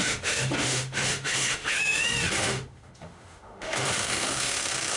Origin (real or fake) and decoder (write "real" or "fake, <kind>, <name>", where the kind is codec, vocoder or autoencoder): fake, autoencoder, DAC-VAE